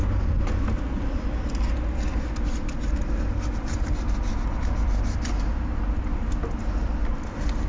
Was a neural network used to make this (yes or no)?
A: no